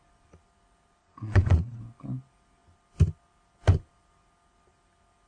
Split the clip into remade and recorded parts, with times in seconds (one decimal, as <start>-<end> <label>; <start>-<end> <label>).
0.0-1.0 recorded; 1.0-1.8 remade; 1.8-5.3 recorded